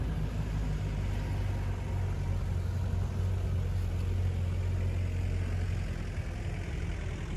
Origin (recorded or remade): recorded